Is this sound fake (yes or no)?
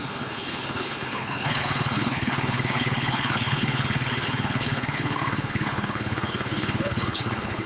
yes